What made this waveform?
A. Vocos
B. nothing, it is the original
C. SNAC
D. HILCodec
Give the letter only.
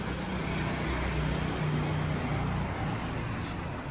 B